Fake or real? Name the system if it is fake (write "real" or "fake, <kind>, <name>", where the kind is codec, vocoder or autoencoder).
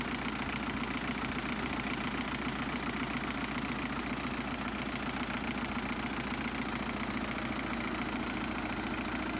real